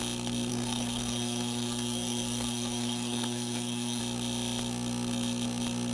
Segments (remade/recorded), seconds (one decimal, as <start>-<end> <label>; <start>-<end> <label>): 0.0-0.5 recorded; 0.5-4.0 remade; 4.0-5.9 recorded